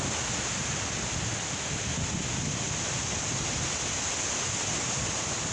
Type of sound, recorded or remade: recorded